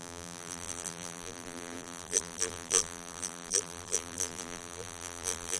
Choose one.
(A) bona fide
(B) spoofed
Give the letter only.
B